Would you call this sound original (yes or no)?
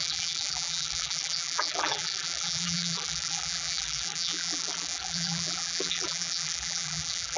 no